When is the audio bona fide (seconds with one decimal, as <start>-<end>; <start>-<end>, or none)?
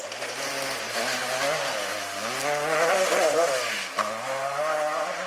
0.0-5.3